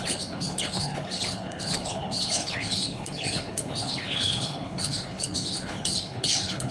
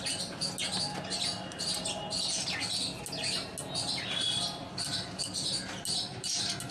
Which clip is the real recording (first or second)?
second